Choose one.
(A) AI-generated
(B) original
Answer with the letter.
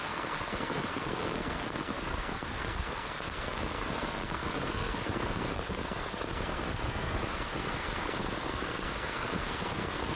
A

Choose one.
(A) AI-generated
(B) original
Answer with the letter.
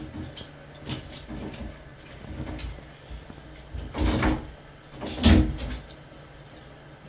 B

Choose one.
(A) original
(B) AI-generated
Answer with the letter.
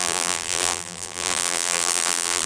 B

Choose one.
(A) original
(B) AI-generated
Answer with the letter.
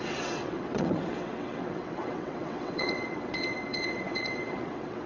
B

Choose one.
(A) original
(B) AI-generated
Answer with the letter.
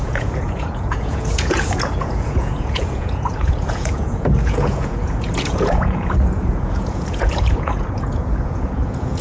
B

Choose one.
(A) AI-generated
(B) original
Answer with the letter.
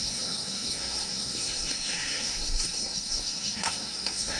A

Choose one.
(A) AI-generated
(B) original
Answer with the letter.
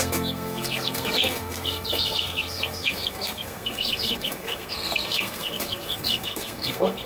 A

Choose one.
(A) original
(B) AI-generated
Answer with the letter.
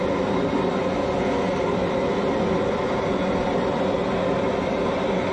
A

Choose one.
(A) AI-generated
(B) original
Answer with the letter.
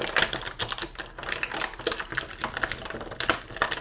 B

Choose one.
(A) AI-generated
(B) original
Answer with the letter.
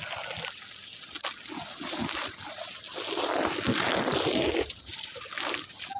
B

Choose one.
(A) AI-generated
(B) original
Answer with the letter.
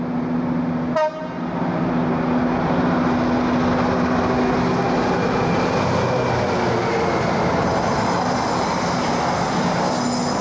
B